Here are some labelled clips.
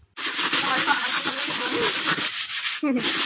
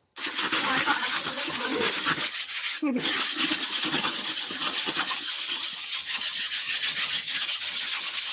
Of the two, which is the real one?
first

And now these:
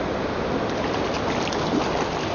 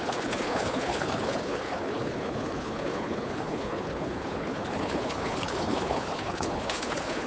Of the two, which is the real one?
first